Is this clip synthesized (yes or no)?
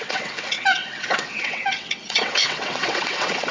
yes